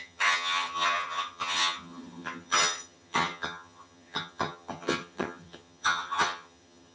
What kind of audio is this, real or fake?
fake